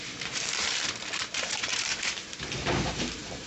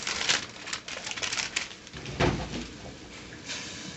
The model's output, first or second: first